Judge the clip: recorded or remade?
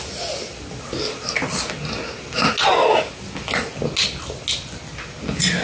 recorded